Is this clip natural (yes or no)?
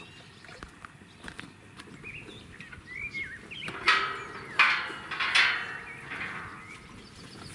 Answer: yes